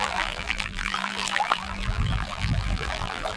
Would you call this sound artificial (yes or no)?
yes